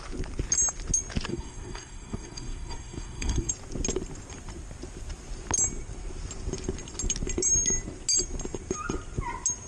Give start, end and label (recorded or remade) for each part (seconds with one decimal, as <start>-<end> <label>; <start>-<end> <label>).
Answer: 0.0-1.3 recorded; 1.3-3.5 remade; 3.5-9.7 recorded

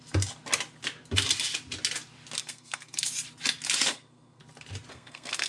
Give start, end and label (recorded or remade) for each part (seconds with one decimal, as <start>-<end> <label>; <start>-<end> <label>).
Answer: 0.0-2.4 recorded; 2.4-3.0 remade; 3.0-3.9 recorded; 3.9-4.4 remade; 4.4-4.9 recorded; 4.9-5.5 remade

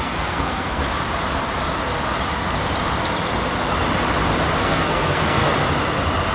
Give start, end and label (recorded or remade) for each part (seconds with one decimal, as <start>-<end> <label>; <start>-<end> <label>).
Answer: 0.0-0.8 remade; 0.8-4.6 recorded; 4.6-5.4 remade; 5.4-6.3 recorded

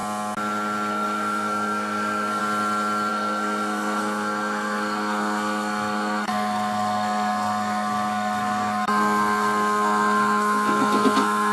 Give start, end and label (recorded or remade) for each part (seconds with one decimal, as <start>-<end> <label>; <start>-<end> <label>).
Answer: 0.0-0.9 recorded; 0.9-2.4 remade; 2.4-3.1 recorded; 3.1-11.5 remade

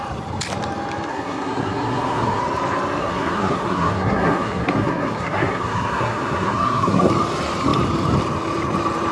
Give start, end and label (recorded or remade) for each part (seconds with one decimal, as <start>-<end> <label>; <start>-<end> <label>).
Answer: 0.0-1.1 recorded; 1.1-2.4 remade; 2.4-3.0 recorded; 3.0-7.1 remade; 7.1-9.1 recorded

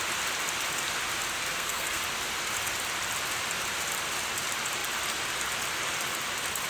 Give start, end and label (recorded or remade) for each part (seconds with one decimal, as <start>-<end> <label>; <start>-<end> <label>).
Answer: 0.0-1.4 recorded; 1.4-2.0 remade; 2.0-6.7 recorded